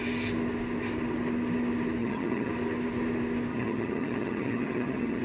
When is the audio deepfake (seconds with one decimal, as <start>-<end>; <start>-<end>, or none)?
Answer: 2.0-2.5; 3.5-5.2